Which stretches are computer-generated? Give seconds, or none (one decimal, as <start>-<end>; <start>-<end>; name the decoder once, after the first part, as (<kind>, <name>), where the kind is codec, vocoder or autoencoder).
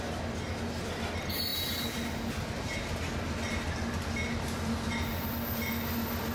none